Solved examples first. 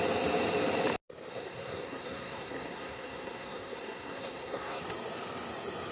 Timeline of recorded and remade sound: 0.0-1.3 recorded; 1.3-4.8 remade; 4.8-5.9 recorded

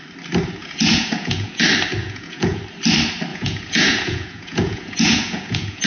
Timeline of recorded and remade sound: 0.0-0.6 recorded; 0.6-1.6 remade; 1.6-2.0 recorded; 2.0-2.6 remade; 2.6-3.3 recorded; 3.3-5.9 remade

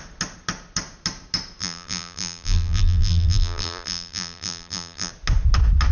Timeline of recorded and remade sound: 0.0-1.6 recorded; 1.6-5.1 remade; 5.1-5.9 recorded

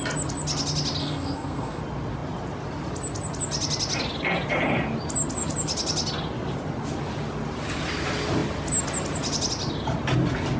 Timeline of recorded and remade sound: 0.0-1.0 recorded; 1.0-1.8 remade; 1.8-10.6 recorded

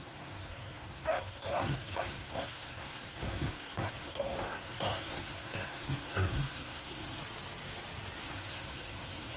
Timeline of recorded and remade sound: 0.0-7.2 remade; 7.2-8.2 recorded; 8.2-9.4 remade